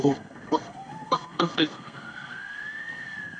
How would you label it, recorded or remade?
remade